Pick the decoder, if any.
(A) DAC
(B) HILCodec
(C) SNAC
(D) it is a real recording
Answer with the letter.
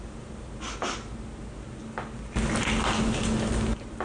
D